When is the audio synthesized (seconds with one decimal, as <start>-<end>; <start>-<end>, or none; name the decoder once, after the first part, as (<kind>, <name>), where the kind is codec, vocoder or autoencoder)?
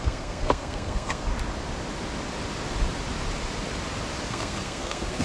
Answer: 0.0-1.3 (codec, SNAC); 4.3-5.2